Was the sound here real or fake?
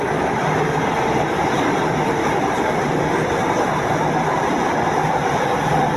fake